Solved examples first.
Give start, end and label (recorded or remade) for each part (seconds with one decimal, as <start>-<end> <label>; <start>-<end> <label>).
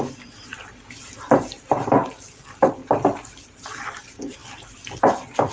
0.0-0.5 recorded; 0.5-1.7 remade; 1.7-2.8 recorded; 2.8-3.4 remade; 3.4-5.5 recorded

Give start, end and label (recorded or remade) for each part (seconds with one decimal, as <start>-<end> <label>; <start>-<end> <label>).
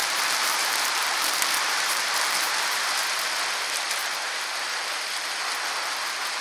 0.0-3.4 remade; 3.4-4.0 recorded; 4.0-4.7 remade; 4.7-6.4 recorded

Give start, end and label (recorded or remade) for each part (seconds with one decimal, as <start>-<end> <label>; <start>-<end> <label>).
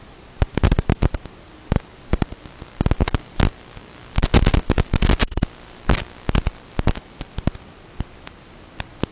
0.0-9.1 recorded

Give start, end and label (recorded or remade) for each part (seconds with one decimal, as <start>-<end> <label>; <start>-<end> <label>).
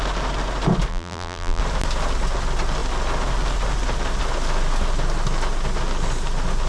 0.0-0.9 recorded; 0.9-1.6 remade; 1.6-6.7 recorded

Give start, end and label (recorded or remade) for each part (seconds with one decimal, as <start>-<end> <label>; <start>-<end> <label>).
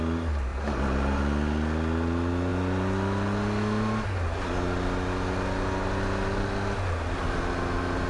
0.0-0.5 recorded; 0.5-1.2 remade; 1.2-8.1 recorded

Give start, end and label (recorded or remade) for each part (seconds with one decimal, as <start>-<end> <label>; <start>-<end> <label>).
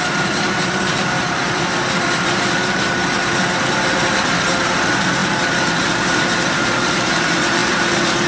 0.0-8.3 remade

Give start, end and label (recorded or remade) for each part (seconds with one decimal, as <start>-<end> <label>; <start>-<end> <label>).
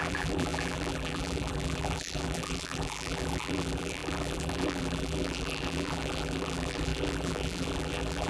0.0-8.3 remade